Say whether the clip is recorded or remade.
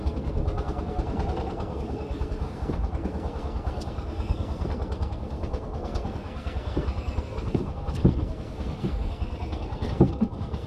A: remade